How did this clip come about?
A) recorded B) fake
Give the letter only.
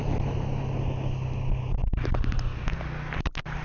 A